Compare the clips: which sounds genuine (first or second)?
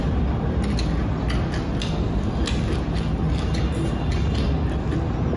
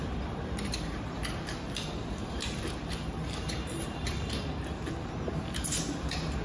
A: first